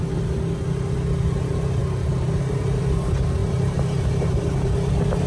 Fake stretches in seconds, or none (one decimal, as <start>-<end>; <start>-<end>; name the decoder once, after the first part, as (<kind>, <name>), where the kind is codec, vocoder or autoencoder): 1.8-2.8 (vocoder, BigVGAN v2); 3.4-4.4